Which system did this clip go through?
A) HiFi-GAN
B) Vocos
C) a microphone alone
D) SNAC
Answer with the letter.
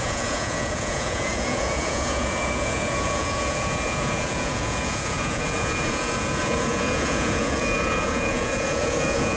B